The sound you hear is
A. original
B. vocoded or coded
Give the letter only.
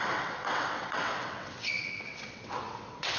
B